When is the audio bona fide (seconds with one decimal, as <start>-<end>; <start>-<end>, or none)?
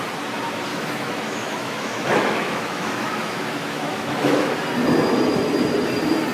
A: 0.0-0.7; 4.5-6.3